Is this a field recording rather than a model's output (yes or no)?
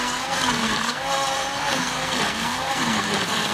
no